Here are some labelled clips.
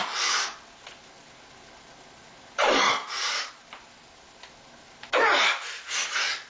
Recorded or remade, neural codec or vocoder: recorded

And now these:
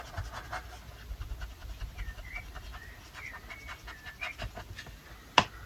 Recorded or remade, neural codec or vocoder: recorded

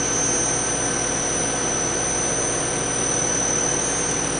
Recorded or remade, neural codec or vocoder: recorded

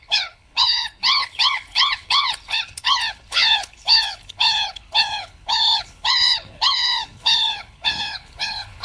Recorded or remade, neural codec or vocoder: remade, codec, HILCodec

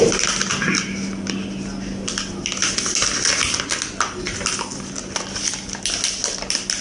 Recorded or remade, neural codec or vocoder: recorded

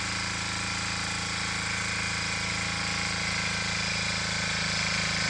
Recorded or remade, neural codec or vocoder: recorded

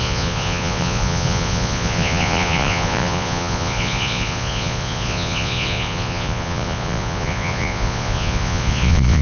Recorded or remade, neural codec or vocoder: remade, vocoder, Vocos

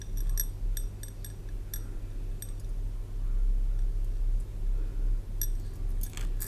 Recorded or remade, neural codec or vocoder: recorded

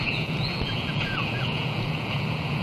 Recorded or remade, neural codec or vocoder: remade, vocoder, Vocos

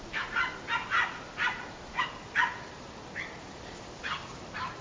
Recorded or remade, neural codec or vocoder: recorded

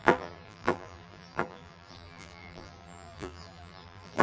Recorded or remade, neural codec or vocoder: remade, vocoder, BigVGAN v2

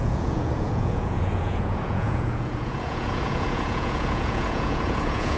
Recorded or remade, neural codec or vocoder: remade, vocoder, Vocos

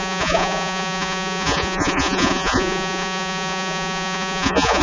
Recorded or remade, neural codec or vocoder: remade, vocoder, Vocos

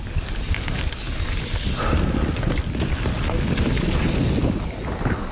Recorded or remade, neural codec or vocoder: recorded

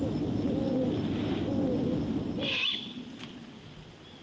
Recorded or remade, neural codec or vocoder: recorded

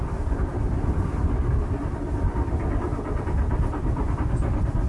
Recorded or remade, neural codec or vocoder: recorded